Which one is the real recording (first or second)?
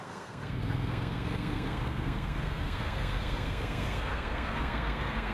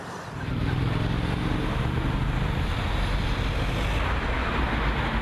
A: second